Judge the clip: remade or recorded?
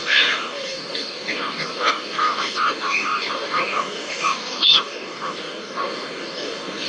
remade